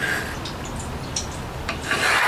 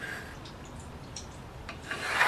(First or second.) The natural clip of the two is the first